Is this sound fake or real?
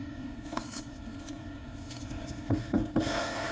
fake